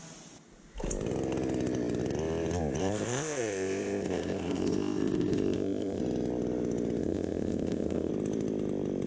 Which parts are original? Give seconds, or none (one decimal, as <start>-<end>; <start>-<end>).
0.0-2.8; 6.0-7.0; 8.1-9.1